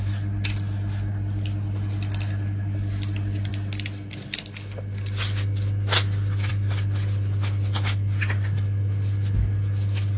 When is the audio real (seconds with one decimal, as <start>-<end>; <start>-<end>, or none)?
0.0-10.2